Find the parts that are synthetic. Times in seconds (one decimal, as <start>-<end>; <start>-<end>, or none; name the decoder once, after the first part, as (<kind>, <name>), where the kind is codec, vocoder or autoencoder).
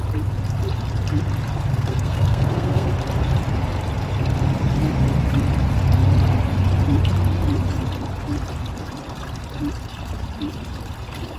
1.7-2.9 (codec, SNAC)